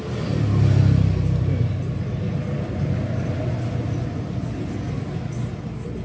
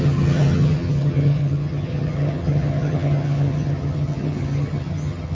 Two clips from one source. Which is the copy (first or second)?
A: second